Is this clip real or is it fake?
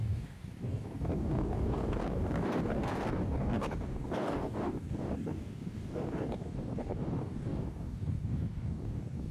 fake